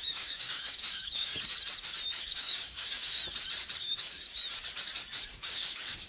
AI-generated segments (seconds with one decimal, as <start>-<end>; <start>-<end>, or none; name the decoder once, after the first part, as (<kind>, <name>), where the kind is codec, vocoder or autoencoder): 0.0-1.3 (codec, DAC); 2.2-3.2; 3.8-4.4; 5.4-6.1